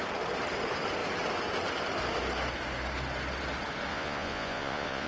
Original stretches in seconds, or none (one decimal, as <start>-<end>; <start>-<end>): 0.0-3.9